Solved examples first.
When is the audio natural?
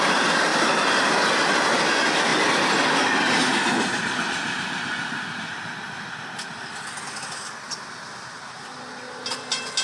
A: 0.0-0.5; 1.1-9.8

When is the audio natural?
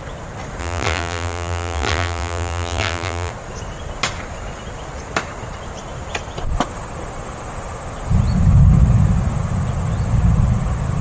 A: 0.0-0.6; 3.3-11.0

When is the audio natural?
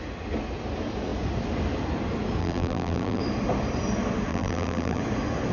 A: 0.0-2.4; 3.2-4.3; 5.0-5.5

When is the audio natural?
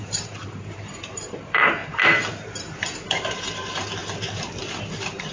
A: 1.8-3.1; 4.0-4.6